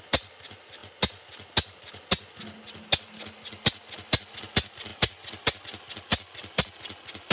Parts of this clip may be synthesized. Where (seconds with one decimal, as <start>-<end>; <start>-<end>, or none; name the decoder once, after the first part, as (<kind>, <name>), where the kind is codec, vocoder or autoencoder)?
none